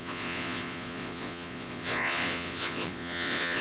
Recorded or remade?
remade